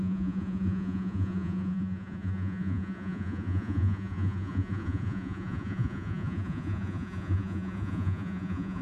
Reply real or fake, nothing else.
fake